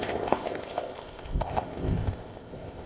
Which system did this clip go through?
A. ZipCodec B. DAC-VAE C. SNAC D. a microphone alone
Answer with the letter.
A